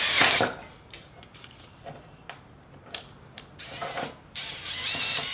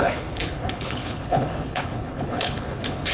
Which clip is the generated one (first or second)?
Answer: second